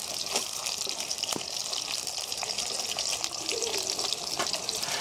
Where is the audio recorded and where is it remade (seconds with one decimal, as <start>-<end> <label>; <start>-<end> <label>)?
0.0-0.6 remade; 0.6-1.1 recorded; 1.1-1.6 remade; 1.6-4.6 recorded; 4.6-5.0 remade